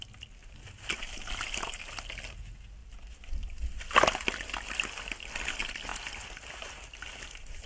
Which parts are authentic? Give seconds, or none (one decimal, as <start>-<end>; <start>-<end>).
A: 0.0-0.4; 1.3-7.7